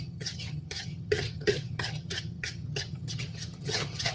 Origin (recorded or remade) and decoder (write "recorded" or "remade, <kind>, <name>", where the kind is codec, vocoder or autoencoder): remade, vocoder, HiFi-GAN